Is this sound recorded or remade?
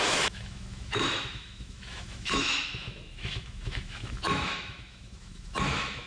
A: remade